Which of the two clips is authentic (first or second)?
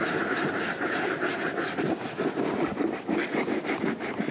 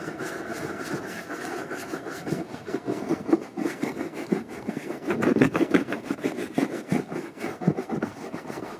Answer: first